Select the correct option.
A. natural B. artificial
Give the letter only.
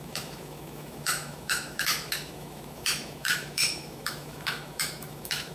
B